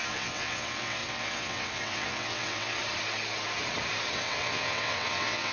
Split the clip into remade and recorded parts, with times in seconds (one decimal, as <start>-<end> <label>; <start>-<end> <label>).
0.0-2.8 remade; 2.8-4.1 recorded; 4.1-5.5 remade